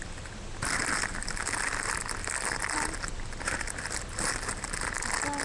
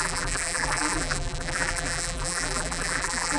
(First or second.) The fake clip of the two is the second